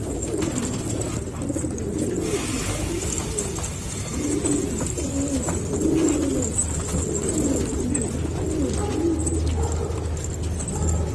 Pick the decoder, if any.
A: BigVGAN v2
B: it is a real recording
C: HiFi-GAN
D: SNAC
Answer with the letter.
B